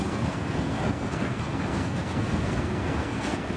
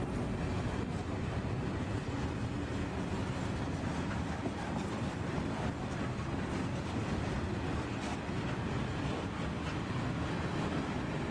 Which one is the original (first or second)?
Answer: second